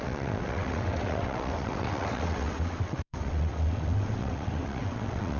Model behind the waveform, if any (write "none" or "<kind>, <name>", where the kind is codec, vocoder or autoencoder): vocoder, WaveNeXt